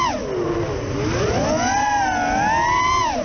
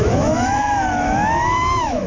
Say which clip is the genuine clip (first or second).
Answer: first